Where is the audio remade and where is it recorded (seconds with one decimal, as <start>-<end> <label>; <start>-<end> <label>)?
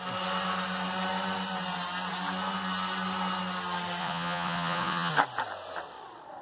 0.0-4.0 recorded; 4.0-5.1 remade; 5.1-6.4 recorded